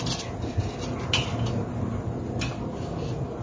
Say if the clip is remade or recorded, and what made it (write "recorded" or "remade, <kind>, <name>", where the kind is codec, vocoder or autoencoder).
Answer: recorded